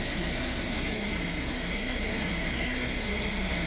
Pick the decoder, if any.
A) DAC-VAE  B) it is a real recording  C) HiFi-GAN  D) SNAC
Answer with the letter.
D